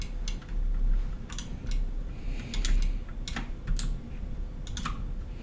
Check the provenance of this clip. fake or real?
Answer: real